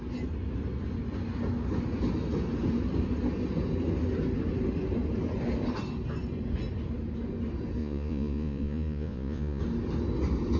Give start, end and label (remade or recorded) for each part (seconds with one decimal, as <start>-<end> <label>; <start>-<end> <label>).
0.0-7.8 recorded; 7.8-9.6 remade; 9.6-10.6 recorded